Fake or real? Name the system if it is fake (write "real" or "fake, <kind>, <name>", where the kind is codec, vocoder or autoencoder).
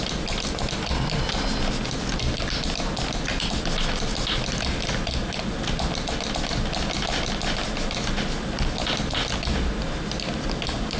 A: real